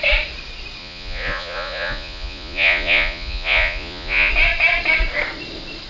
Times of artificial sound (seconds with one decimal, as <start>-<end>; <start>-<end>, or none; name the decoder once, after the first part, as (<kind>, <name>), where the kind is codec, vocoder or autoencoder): 0.8-4.3 (vocoder, Vocos)